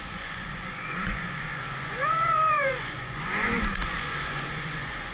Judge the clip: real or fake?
fake